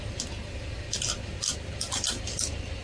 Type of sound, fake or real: real